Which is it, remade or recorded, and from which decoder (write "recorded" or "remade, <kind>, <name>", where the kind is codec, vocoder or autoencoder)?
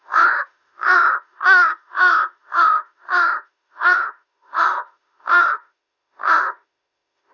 remade, autoencoder, DAC-VAE